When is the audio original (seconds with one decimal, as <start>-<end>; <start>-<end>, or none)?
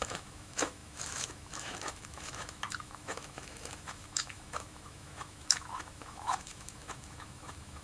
none